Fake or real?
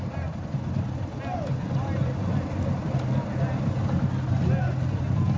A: real